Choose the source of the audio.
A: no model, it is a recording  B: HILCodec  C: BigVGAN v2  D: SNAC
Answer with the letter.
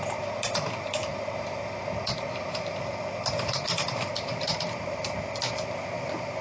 A